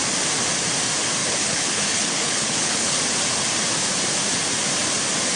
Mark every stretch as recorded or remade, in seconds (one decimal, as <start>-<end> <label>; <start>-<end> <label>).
0.0-1.2 recorded; 1.2-3.0 remade; 3.0-5.4 recorded